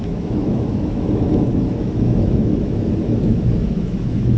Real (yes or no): no